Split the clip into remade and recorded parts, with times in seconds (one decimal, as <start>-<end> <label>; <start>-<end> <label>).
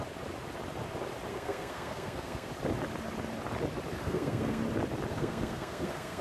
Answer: 0.0-1.3 recorded; 1.3-2.5 remade; 2.5-4.0 recorded; 4.0-4.6 remade; 4.6-5.1 recorded; 5.1-6.2 remade